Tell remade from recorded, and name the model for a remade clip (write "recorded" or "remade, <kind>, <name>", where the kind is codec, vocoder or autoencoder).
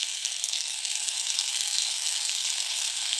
remade, codec, SNAC